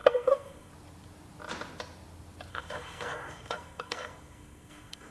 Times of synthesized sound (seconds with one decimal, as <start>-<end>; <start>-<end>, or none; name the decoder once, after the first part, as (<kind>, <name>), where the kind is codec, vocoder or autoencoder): 0.0-0.7 (codec, SNAC); 2.5-5.1